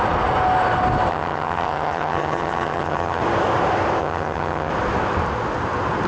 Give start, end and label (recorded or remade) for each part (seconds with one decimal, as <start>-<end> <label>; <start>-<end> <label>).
0.0-1.1 recorded; 1.1-3.2 remade; 3.2-4.0 recorded; 4.0-4.7 remade; 4.7-6.1 recorded